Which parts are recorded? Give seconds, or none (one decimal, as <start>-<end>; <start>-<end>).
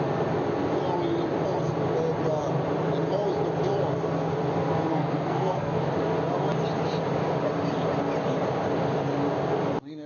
0.0-4.9; 5.8-10.1